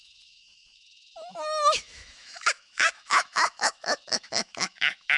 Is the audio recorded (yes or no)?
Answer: no